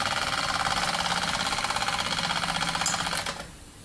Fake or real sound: real